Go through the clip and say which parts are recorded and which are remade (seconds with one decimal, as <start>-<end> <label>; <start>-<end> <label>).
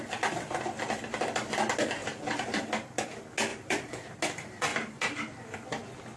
0.0-2.0 recorded; 2.0-2.6 remade; 2.6-3.5 recorded; 3.5-4.2 remade; 4.2-4.7 recorded; 4.7-5.4 remade; 5.4-6.2 recorded